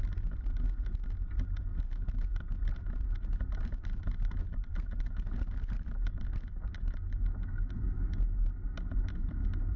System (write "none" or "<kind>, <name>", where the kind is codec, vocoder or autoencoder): none